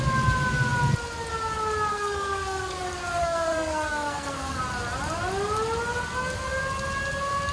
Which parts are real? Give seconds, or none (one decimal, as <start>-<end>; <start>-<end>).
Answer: 0.0-1.9; 2.8-3.2; 4.6-7.5